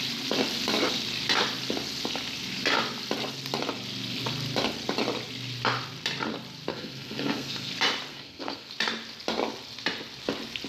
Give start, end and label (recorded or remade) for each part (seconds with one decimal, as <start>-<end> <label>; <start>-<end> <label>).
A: 0.0-6.7 recorded; 6.7-7.7 remade; 7.7-8.1 recorded; 8.1-8.7 remade; 8.7-10.7 recorded